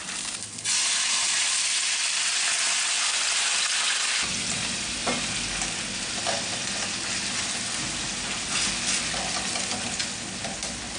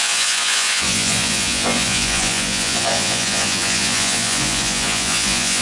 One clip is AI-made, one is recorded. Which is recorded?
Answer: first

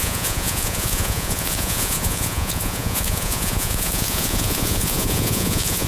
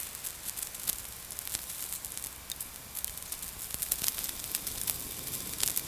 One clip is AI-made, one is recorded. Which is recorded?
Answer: second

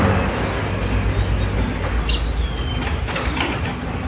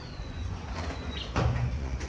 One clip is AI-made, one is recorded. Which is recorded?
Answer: first